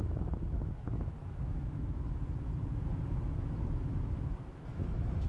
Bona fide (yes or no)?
no